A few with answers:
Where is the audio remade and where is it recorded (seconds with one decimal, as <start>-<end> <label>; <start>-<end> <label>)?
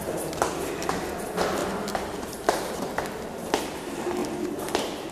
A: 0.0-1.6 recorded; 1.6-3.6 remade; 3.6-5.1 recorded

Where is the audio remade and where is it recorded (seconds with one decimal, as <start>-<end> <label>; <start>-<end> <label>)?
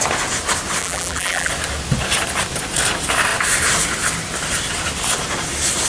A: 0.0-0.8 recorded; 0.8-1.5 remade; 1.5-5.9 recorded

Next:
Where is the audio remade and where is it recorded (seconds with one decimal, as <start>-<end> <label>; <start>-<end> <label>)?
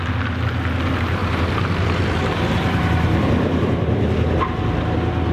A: 0.0-1.2 recorded; 1.2-4.4 remade; 4.4-5.3 recorded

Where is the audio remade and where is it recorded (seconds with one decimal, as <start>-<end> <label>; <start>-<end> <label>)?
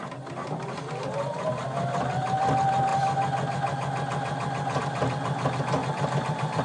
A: 0.0-5.8 recorded; 5.8-6.6 remade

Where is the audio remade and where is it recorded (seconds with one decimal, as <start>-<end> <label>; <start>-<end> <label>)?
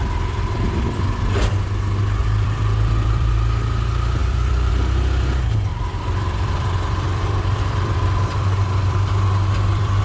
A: 0.0-2.2 recorded; 2.2-3.3 remade; 3.3-4.2 recorded; 4.2-4.7 remade; 4.7-5.7 recorded; 5.7-10.0 remade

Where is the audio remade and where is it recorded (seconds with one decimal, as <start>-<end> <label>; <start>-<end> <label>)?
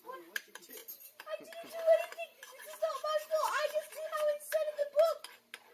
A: 0.0-0.8 remade; 0.8-2.2 recorded; 2.2-4.8 remade; 4.8-5.7 recorded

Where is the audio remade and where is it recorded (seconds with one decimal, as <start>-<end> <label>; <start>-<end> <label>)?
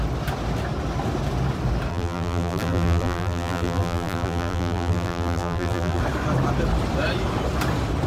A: 0.0-1.9 recorded; 1.9-6.0 remade; 6.0-8.1 recorded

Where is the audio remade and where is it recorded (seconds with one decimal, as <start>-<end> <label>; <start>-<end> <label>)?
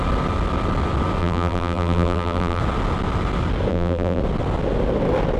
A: 0.0-1.2 recorded; 1.2-2.6 remade; 2.6-3.7 recorded; 3.7-4.2 remade; 4.2-5.4 recorded